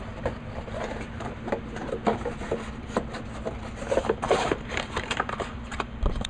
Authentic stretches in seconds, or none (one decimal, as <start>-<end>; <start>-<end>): 0.0-4.0